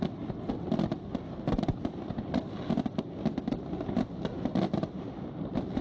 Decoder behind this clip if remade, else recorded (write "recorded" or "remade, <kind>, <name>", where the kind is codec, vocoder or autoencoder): recorded